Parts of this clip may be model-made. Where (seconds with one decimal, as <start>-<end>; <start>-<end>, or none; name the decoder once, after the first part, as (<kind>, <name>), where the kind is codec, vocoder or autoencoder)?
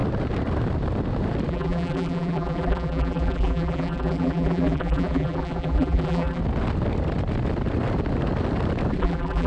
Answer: 1.5-6.4 (vocoder, BigVGAN v2); 9.0-9.5